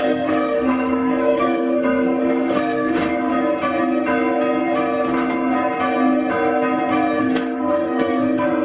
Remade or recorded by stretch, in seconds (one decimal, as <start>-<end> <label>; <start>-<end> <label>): 0.0-3.3 remade; 3.3-7.2 recorded; 7.2-8.6 remade